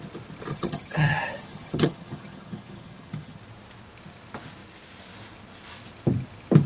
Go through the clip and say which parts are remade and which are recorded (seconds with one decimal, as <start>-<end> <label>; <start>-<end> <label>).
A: 0.0-0.5 recorded; 0.5-3.4 remade; 3.4-6.7 recorded